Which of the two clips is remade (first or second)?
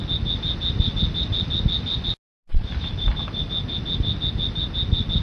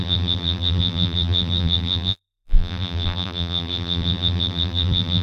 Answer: second